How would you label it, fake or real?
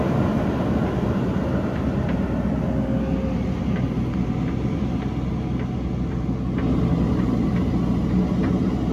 real